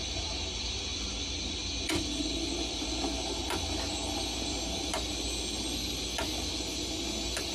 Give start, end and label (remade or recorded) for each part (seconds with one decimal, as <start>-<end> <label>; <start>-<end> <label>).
0.0-7.5 recorded